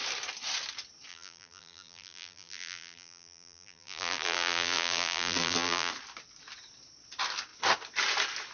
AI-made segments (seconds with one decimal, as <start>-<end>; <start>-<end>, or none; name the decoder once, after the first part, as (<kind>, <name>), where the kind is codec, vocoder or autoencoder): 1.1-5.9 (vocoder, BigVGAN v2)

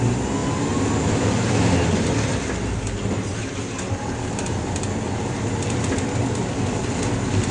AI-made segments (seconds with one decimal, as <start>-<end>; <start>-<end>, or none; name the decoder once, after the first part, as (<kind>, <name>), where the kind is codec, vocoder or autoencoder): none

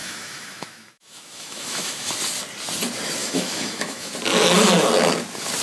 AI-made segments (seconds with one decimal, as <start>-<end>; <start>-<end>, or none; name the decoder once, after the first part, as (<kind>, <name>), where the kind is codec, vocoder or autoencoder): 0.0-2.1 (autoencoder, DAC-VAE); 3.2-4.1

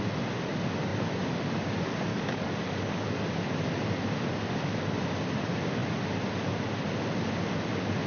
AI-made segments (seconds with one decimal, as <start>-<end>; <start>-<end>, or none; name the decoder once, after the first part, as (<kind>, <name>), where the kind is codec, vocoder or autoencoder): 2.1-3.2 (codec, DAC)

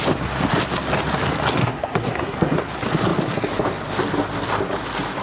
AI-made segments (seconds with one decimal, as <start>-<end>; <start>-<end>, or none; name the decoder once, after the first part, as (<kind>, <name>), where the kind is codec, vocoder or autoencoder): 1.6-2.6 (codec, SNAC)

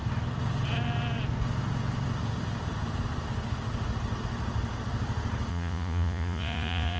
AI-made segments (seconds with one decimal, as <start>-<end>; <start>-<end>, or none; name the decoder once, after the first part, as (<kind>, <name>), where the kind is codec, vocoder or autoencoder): 5.5-7.0 (vocoder, Vocos)